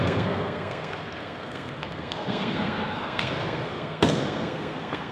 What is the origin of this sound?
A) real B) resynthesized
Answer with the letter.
B